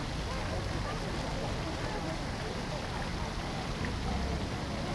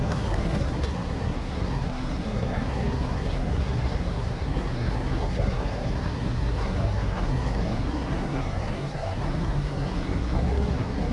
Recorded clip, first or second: first